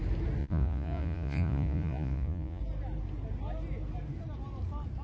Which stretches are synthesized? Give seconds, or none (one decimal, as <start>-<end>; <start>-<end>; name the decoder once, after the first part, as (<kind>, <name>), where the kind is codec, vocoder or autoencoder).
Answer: 0.4-2.6 (vocoder, Vocos)